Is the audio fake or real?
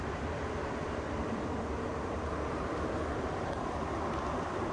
fake